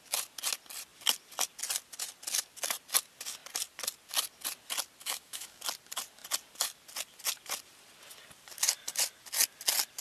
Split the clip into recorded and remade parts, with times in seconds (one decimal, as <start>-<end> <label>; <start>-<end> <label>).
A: 0.0-5.0 recorded; 5.0-5.6 remade; 5.6-10.0 recorded